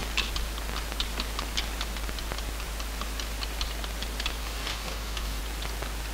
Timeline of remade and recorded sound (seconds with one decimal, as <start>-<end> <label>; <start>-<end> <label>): 0.0-4.4 recorded; 4.4-5.4 remade; 5.4-6.1 recorded